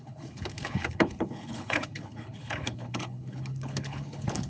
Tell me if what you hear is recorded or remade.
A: remade